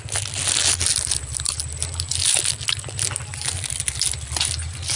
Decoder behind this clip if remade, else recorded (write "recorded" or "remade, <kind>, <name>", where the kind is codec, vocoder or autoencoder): recorded